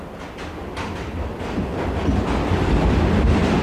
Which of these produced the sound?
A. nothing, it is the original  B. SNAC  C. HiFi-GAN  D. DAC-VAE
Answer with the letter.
A